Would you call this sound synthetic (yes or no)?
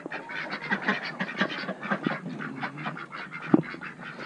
no